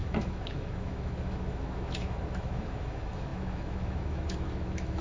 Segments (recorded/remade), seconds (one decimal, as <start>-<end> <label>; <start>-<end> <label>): 0.0-5.0 remade